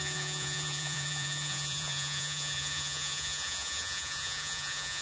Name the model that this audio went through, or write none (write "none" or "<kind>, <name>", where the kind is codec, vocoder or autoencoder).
vocoder, Vocos